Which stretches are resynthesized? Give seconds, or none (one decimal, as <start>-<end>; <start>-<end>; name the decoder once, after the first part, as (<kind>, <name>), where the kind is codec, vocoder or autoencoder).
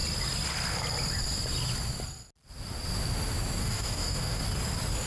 3.6-4.4 (codec, DAC)